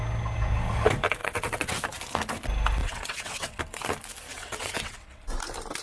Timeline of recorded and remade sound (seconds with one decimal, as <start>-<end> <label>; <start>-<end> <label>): 0.0-1.2 recorded; 1.2-1.8 remade; 1.8-2.8 recorded; 2.8-3.6 remade; 3.6-4.3 recorded; 4.3-5.2 remade; 5.2-5.8 recorded

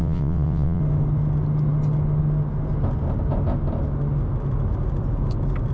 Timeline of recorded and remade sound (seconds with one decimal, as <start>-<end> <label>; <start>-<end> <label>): 0.0-0.8 remade; 0.8-5.7 recorded

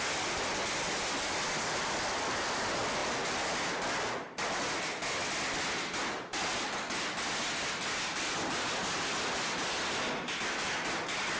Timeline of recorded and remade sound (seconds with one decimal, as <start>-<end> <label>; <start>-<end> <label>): 0.0-11.4 recorded

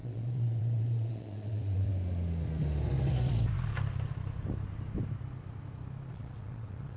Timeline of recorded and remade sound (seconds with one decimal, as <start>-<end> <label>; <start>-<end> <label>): 0.0-1.9 remade; 1.9-6.1 recorded; 6.1-7.0 remade

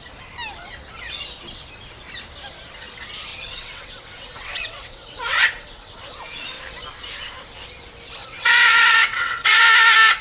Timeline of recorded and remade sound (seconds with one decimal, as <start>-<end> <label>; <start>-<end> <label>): 0.0-3.3 recorded; 3.3-6.2 remade; 6.2-8.2 recorded; 8.2-9.6 remade; 9.6-10.2 recorded

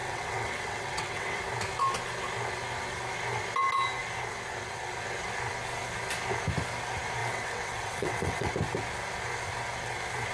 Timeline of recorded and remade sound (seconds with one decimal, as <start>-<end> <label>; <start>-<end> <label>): 0.0-1.4 remade; 1.4-7.2 recorded; 7.2-8.5 remade; 8.5-10.3 recorded

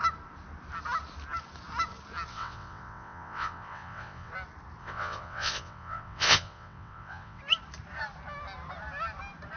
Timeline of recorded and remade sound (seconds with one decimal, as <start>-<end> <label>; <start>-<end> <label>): 0.0-2.3 recorded; 2.3-4.3 remade; 4.3-4.8 recorded; 4.8-7.4 remade; 7.4-9.6 recorded

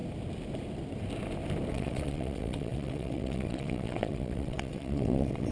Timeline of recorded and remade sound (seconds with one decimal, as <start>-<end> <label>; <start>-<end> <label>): 0.0-1.7 recorded; 1.7-5.5 remade